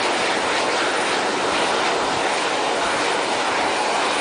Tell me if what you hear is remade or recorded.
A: recorded